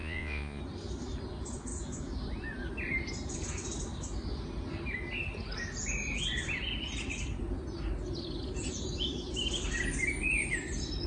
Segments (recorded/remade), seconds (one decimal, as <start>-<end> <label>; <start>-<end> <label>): 0.0-0.6 remade; 0.6-11.1 recorded